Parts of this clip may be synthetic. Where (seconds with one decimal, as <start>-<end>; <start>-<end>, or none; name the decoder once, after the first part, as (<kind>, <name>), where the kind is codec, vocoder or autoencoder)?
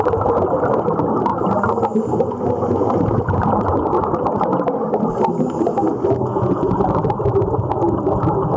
none